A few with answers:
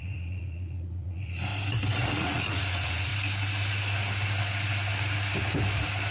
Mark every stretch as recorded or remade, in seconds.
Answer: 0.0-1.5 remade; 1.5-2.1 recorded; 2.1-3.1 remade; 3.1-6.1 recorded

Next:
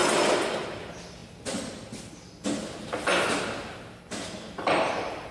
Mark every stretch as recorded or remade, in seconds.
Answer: 0.0-5.3 recorded